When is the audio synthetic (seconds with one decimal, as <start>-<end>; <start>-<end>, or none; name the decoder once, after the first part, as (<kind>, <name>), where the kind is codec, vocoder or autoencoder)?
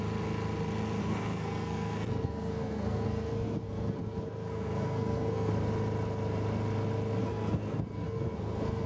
1.0-5.5 (codec, SNAC); 7.2-8.9